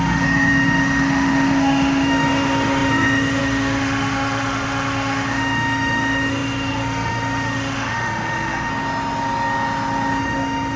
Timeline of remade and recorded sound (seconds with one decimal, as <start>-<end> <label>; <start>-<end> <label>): 0.0-8.7 remade; 8.7-10.2 recorded; 10.2-10.8 remade